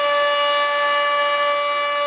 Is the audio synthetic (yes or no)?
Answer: no